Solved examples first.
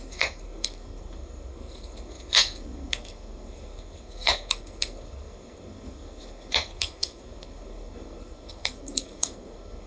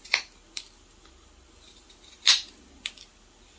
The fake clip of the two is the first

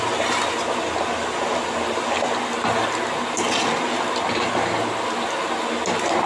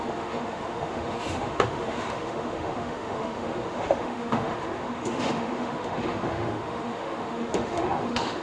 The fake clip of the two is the second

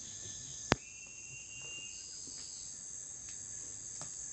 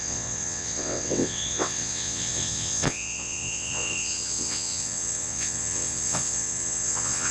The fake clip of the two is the second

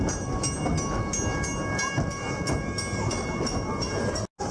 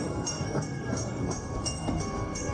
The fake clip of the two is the second